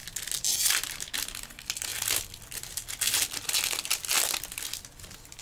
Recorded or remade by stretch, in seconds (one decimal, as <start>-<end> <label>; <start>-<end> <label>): 0.0-5.4 recorded